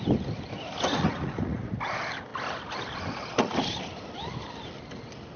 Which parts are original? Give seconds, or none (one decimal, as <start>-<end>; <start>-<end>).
0.0-0.9; 1.7-5.4